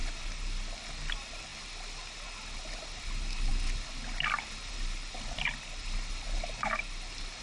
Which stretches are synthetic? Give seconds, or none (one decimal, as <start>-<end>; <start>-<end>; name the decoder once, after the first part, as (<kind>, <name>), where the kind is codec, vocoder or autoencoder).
none